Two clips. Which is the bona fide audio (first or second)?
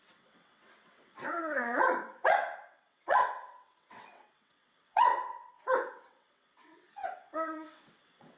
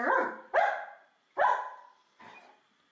second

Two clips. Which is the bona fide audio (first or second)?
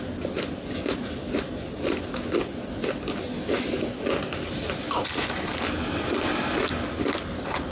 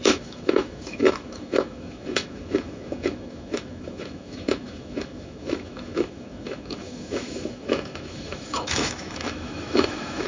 first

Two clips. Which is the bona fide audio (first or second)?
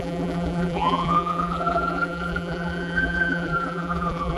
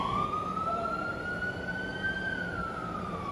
second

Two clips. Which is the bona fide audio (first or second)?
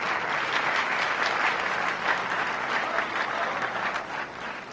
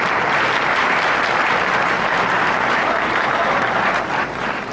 first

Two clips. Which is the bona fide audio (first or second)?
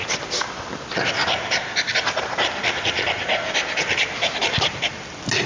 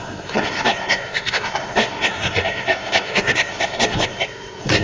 first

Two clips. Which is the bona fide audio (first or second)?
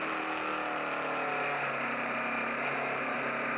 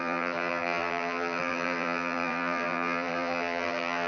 first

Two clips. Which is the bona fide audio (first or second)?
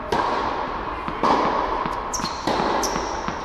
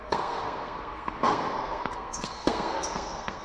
first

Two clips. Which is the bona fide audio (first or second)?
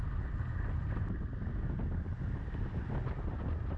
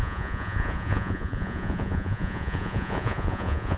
first